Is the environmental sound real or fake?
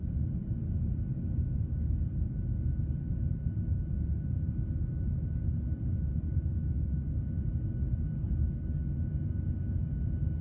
real